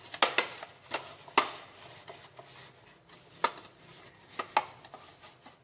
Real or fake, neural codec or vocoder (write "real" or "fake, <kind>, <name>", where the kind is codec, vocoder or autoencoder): real